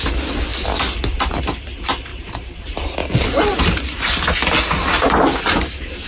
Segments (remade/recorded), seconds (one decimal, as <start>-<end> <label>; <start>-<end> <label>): 0.0-2.1 recorded; 2.1-2.6 remade; 2.6-6.1 recorded